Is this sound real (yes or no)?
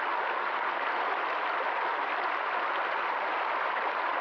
yes